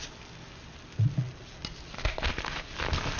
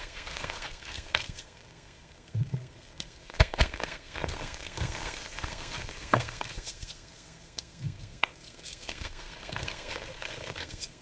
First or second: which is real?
first